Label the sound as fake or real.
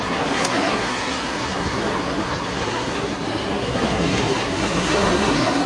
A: fake